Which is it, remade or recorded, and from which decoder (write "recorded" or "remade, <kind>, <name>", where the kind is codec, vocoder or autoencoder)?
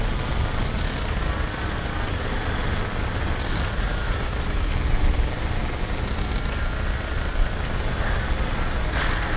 recorded